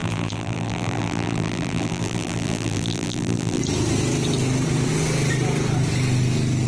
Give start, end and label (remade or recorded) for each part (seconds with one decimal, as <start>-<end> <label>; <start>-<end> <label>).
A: 0.0-3.6 remade; 3.6-6.7 recorded